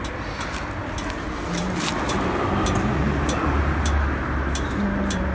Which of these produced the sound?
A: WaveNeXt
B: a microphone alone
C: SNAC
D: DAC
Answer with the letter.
B